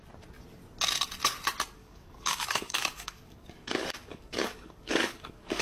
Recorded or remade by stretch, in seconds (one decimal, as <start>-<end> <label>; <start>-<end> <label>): 0.0-1.8 recorded; 1.8-5.6 remade